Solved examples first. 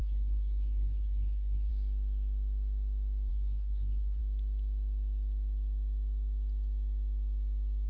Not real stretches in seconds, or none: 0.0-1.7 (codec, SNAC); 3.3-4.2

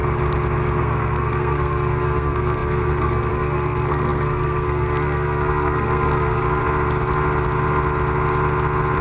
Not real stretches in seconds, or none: 0.8-6.6 (codec, SNAC)

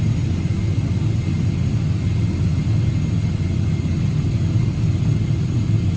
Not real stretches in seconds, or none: none

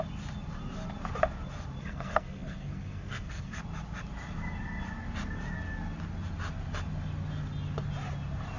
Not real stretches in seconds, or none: 1.8-3.6 (codec, SNAC)

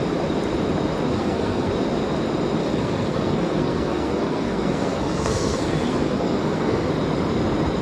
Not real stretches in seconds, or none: 1.1-1.7 (codec, SNAC); 2.6-6.9

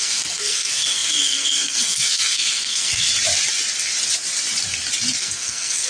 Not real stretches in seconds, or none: 0.0-3.1 (codec, SNAC); 5.2-5.9